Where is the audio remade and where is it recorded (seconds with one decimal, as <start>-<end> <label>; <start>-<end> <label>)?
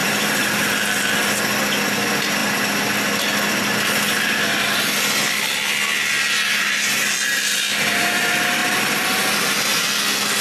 0.0-0.6 remade; 0.6-10.4 recorded